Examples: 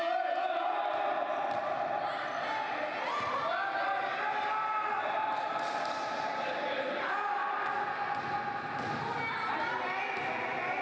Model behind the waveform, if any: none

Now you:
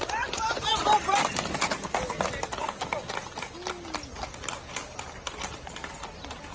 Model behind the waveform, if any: none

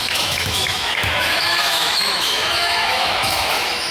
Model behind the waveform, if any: autoencoder, DAC-VAE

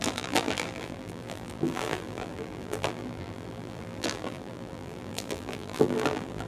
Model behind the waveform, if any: vocoder, BigVGAN v2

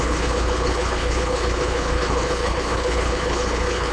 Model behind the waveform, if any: codec, HILCodec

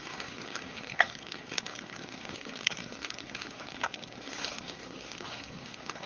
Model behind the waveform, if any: codec, SNAC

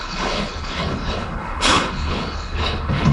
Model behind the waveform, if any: codec, HILCodec